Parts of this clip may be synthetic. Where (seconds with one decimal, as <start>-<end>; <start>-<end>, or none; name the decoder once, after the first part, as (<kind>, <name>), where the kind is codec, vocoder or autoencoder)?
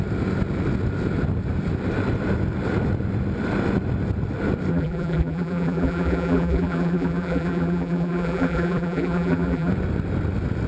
4.7-9.7 (vocoder, BigVGAN v2)